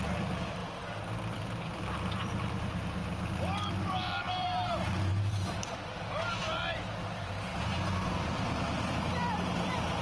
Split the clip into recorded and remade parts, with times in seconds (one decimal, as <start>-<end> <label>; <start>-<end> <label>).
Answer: 0.0-3.0 remade; 3.0-3.7 recorded; 3.7-7.5 remade; 7.5-8.9 recorded; 8.9-10.0 remade